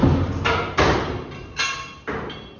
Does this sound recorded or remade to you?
recorded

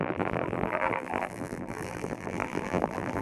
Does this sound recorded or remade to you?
remade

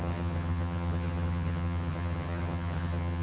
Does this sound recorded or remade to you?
remade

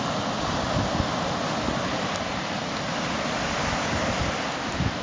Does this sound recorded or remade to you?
recorded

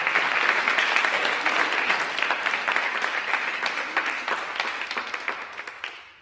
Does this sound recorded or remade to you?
recorded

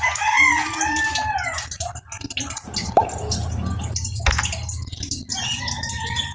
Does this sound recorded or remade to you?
recorded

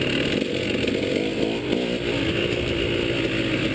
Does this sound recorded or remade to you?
recorded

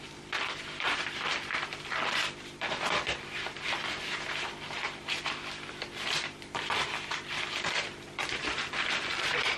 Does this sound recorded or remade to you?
remade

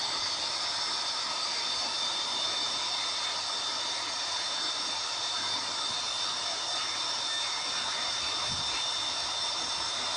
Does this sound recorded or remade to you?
recorded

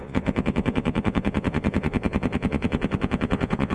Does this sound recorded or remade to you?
remade